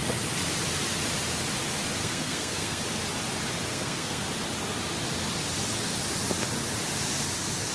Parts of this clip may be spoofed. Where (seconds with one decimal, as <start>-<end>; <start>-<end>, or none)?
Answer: 2.0-2.8; 3.7-4.2